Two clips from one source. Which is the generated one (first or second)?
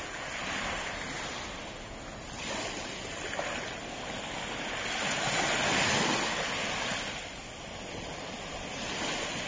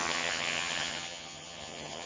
second